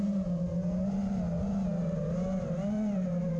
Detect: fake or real real